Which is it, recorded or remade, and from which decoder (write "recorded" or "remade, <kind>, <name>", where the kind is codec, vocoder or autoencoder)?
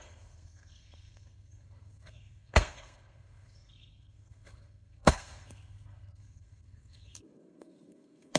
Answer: remade, codec, SNAC